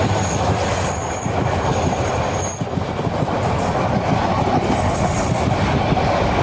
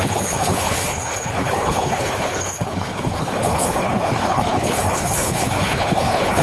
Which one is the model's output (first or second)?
second